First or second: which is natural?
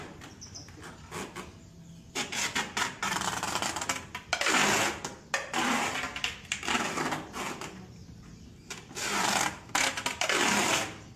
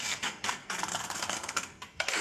first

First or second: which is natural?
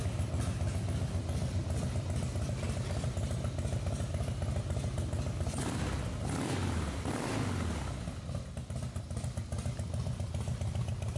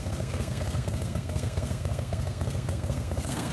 first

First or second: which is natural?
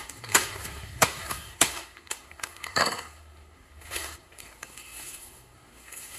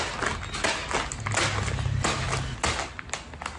second